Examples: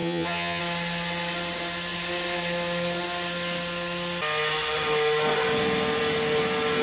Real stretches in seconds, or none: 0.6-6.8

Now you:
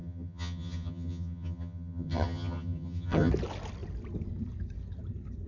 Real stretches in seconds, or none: 3.3-5.5